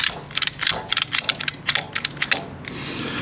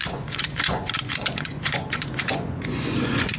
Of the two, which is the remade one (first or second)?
second